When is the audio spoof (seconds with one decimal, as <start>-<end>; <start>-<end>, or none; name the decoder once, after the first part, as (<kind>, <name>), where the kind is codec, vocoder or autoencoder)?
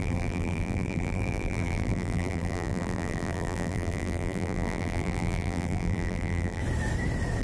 0.0-6.6 (vocoder, BigVGAN v2)